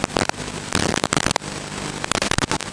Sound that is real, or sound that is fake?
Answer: real